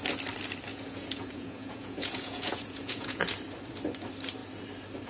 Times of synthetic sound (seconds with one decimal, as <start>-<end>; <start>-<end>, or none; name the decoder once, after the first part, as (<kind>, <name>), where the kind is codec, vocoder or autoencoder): 0.7-3.2 (vocoder, Vocos)